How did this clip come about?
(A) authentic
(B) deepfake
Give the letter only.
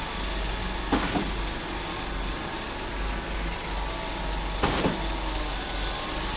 A